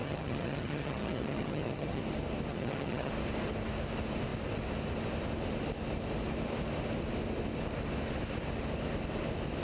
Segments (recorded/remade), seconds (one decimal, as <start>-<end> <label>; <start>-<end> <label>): 0.0-2.0 remade; 2.0-2.5 recorded; 2.5-3.1 remade; 3.1-9.6 recorded